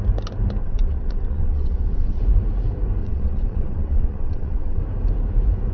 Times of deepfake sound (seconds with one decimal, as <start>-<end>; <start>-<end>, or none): 0.6-2.2; 3.0-4.8